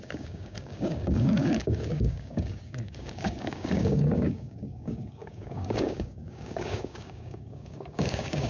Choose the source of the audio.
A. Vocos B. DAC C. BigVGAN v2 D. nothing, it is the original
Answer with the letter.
B